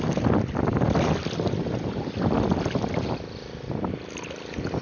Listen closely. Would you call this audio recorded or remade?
recorded